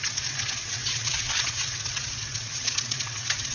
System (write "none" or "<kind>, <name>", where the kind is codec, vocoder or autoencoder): vocoder, WaveNeXt